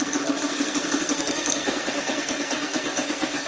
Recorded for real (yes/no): no